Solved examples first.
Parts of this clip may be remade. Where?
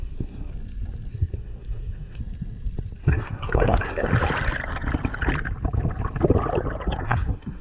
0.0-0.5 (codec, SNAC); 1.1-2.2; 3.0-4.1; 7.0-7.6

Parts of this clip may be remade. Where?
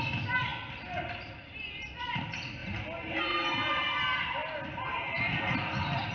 none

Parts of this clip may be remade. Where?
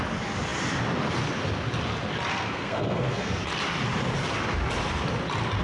2.3-3.3 (codec, SNAC)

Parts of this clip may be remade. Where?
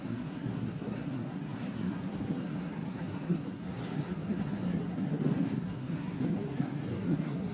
0.0-7.5 (codec, SNAC)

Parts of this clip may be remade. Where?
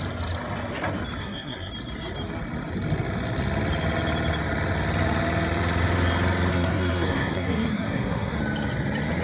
1.2-1.7 (codec, SNAC); 6.5-8.4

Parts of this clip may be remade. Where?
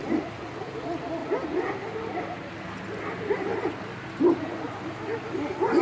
none